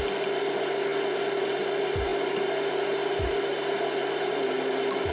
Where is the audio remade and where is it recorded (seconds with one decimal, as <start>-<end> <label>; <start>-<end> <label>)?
0.0-5.1 recorded